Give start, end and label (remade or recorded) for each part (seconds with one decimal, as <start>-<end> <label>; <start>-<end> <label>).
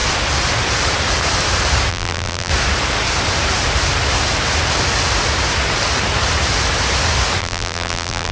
0.0-1.9 recorded; 1.9-2.5 remade; 2.5-7.4 recorded; 7.4-8.3 remade